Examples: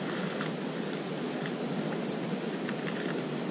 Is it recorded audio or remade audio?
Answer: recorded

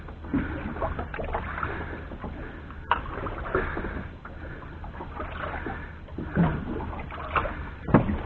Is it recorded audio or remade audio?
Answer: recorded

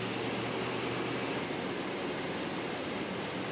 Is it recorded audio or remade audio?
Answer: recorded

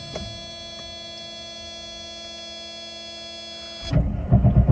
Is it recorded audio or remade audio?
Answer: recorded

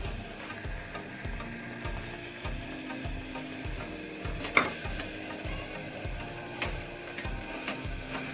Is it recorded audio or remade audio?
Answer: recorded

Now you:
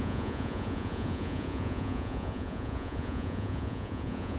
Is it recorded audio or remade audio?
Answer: remade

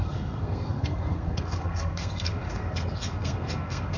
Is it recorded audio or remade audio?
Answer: remade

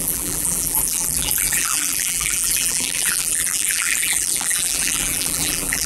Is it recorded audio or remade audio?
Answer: remade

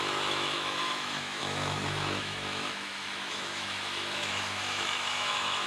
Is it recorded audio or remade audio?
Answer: remade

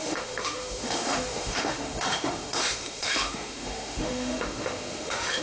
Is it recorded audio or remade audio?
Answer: remade